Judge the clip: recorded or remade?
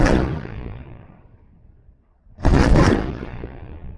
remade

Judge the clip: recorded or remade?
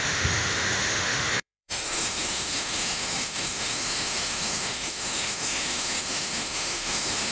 remade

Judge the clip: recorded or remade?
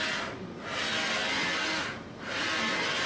recorded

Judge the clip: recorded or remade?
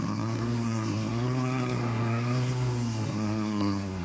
remade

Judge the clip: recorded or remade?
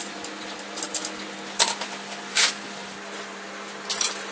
recorded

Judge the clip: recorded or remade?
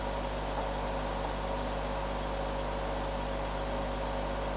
recorded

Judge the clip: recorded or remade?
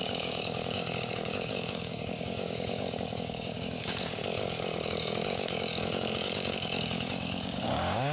remade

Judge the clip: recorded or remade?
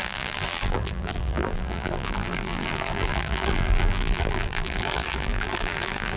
remade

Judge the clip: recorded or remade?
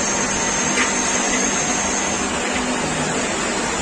recorded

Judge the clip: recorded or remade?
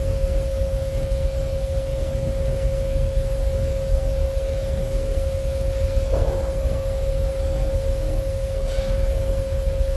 remade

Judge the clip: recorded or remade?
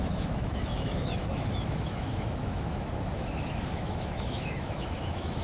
remade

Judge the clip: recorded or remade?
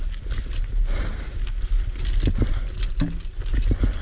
recorded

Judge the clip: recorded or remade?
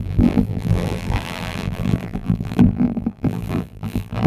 remade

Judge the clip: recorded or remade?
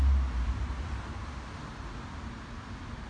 recorded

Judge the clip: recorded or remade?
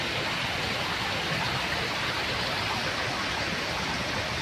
recorded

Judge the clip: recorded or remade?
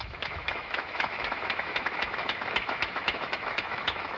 remade